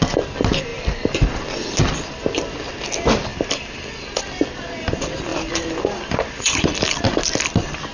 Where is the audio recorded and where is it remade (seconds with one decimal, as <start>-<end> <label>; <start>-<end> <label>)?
0.0-3.3 recorded; 3.3-4.2 remade; 4.2-5.3 recorded; 5.3-6.9 remade; 6.9-7.9 recorded